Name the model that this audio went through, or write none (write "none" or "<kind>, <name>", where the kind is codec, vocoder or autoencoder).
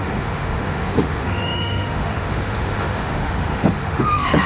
autoencoder, DAC-VAE